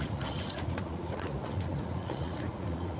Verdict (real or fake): fake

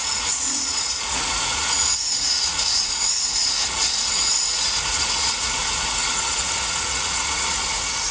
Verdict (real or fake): fake